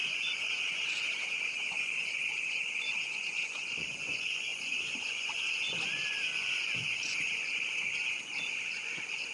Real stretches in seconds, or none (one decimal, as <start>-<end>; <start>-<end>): none